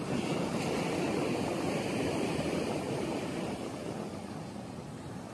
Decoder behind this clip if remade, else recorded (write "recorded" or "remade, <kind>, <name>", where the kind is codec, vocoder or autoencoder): recorded